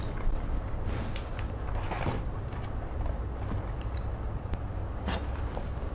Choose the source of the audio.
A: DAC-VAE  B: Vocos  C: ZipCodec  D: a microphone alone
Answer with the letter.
D